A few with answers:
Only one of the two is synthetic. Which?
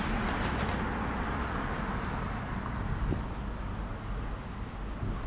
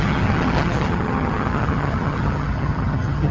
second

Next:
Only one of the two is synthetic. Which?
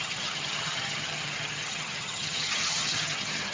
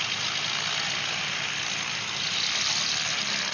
first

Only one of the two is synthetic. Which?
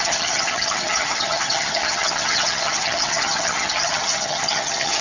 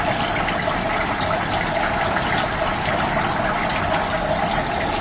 first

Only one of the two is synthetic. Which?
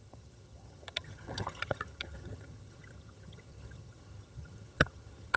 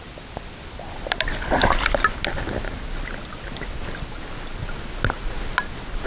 first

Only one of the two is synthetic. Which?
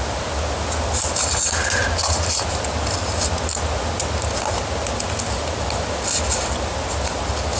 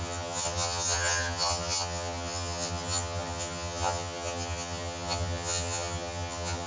second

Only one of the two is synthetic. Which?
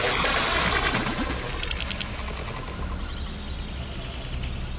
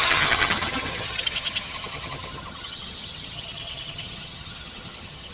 second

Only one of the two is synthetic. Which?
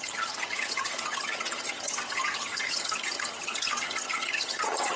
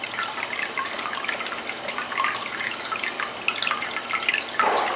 first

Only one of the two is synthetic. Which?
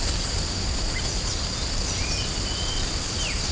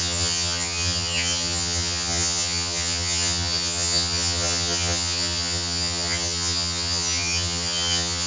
second